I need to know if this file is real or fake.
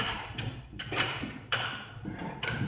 fake